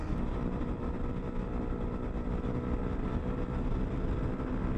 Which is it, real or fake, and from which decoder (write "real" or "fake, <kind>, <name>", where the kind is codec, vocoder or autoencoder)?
real